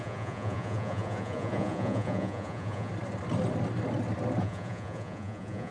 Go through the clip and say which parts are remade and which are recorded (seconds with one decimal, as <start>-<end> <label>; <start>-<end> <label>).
0.0-2.9 remade; 2.9-4.4 recorded; 4.4-5.7 remade